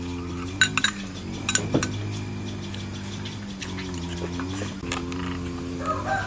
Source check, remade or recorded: recorded